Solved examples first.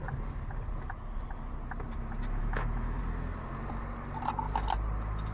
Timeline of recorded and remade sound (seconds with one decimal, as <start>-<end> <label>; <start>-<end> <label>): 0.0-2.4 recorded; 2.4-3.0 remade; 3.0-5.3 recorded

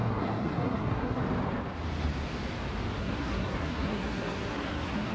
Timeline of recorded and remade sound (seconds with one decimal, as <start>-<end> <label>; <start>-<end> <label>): 0.0-1.2 remade; 1.2-3.0 recorded; 3.0-5.1 remade

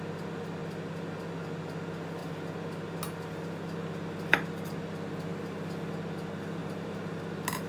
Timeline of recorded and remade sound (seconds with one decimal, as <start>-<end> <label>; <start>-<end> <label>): 0.0-6.6 recorded; 6.6-7.2 remade; 7.2-7.7 recorded

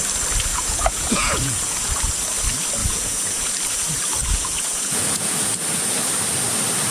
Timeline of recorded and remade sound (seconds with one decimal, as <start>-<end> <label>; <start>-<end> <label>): 0.0-0.5 recorded; 0.5-2.0 remade; 2.0-2.8 recorded; 2.8-3.5 remade; 3.5-4.2 recorded; 4.2-5.5 remade; 5.5-6.9 recorded